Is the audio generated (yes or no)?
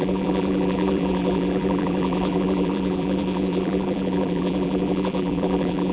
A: yes